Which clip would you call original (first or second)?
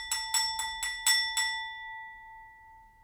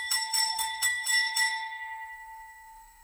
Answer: first